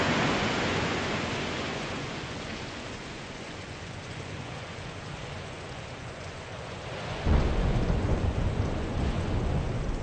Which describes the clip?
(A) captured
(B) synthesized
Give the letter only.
B